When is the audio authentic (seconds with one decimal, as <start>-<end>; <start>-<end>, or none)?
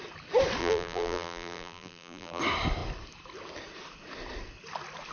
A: 0.0-0.6; 2.4-5.1